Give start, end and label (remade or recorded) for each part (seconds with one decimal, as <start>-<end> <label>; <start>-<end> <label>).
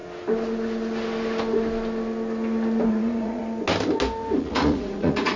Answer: 0.0-2.9 recorded; 2.9-3.4 remade; 3.4-4.4 recorded; 4.4-5.4 remade